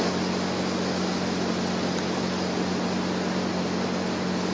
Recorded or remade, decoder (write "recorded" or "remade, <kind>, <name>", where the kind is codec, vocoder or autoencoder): recorded